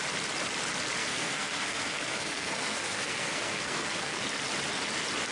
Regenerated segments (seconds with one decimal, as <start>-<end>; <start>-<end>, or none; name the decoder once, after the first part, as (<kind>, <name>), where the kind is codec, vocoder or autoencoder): 1.0-4.2 (codec, SNAC)